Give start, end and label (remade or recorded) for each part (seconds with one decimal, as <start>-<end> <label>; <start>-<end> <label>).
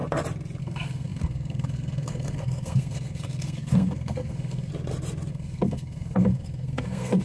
0.0-0.6 recorded; 0.6-4.7 remade; 4.7-5.3 recorded; 5.3-7.2 remade